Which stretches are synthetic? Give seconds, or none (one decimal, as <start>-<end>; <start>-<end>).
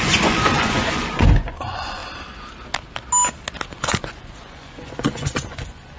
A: 0.0-2.0; 3.7-6.0